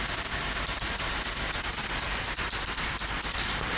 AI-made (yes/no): yes